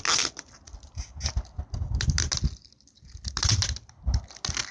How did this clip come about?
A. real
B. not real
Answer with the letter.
A